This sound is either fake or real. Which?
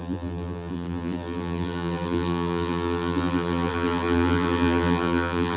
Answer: fake